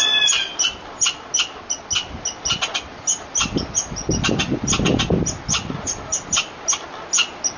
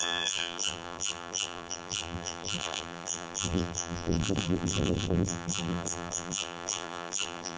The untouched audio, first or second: first